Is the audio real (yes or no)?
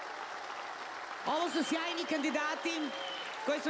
yes